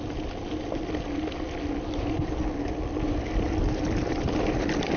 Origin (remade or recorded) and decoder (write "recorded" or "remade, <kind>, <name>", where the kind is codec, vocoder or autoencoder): recorded